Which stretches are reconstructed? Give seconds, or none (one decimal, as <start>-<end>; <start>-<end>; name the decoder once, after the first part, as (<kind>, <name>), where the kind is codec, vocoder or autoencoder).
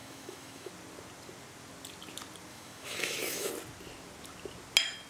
0.0-0.7 (autoencoder, DAC-VAE); 2.5-3.5